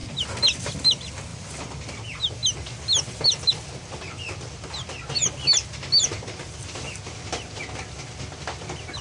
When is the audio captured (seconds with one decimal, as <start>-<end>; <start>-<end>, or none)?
0.0-1.3; 2.0-9.0